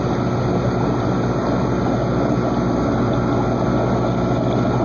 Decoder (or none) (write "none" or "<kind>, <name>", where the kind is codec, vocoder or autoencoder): none